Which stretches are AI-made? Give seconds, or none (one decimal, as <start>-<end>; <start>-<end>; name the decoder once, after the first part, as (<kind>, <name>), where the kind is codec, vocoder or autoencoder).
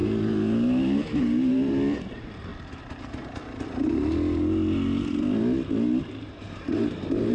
0.0-2.5 (vocoder, BigVGAN v2); 6.2-7.3